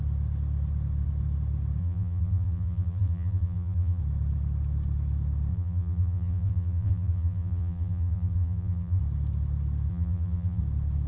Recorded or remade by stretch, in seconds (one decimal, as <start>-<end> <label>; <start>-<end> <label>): 0.0-1.8 recorded; 1.8-4.0 remade; 4.0-5.5 recorded; 5.5-9.0 remade; 9.0-9.9 recorded; 9.9-10.6 remade; 10.6-11.1 recorded